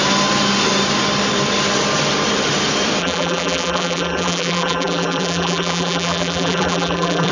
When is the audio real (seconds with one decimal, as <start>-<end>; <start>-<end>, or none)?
0.0-3.0